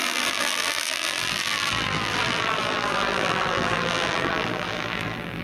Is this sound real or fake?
fake